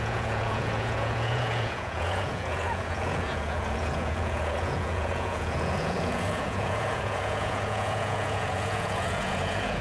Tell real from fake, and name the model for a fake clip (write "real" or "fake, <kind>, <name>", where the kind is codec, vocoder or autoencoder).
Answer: fake, vocoder, Vocos